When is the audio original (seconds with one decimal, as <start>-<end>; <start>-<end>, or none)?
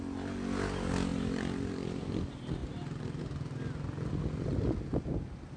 0.0-1.1; 2.1-5.6